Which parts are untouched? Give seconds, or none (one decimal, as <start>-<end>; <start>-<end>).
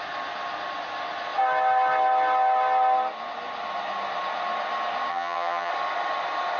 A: 0.0-5.1; 5.7-6.6